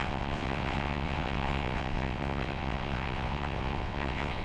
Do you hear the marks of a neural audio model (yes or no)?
yes